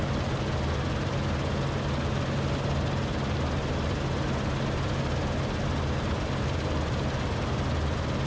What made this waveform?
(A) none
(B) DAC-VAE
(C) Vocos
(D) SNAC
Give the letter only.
A